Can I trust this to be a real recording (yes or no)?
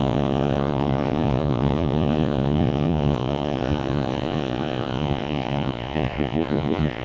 no